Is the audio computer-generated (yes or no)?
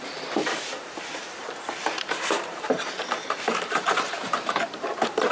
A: yes